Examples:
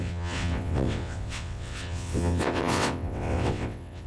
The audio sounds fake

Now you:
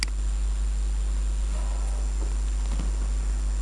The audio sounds real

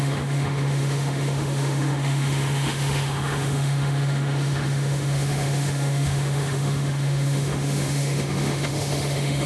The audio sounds fake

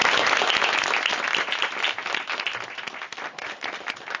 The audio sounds real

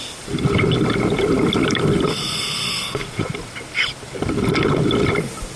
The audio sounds real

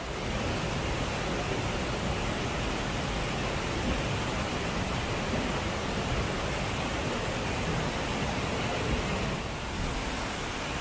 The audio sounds real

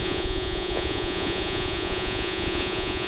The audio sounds fake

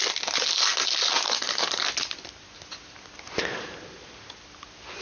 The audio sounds real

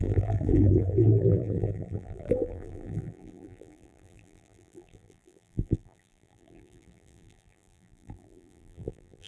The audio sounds fake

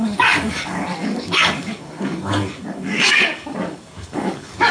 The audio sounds fake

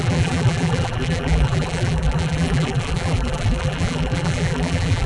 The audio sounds fake